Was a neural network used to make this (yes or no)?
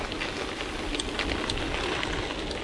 no